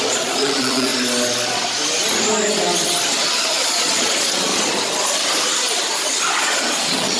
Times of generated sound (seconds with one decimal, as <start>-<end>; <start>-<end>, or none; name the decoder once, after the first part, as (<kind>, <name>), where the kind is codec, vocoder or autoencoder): 0.0-0.9 (vocoder, Vocos); 3.1-4.5; 6.4-7.2